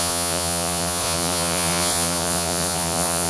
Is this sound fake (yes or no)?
yes